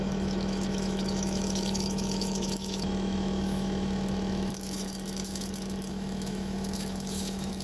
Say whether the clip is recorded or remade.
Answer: remade